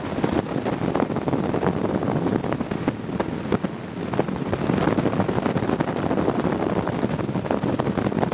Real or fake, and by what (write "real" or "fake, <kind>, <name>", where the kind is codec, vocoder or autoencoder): real